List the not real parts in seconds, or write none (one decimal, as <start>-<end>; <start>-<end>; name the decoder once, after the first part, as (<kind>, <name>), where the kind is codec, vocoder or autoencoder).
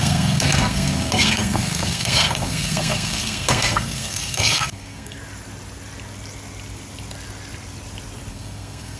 0.0-5.2 (codec, SNAC); 8.3-9.0